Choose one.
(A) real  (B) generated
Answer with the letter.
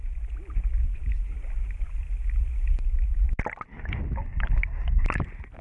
A